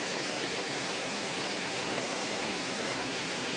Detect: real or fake fake